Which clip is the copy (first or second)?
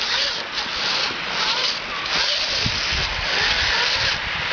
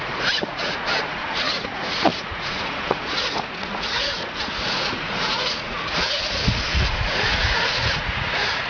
second